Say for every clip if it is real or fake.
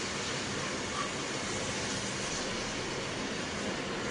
real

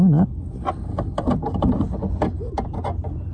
real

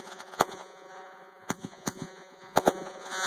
fake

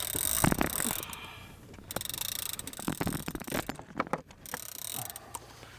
real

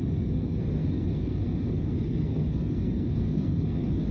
fake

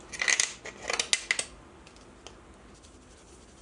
real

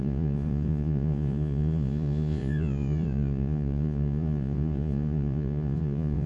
fake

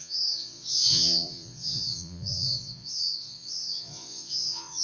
fake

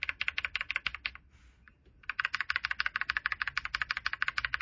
real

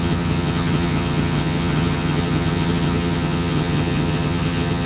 fake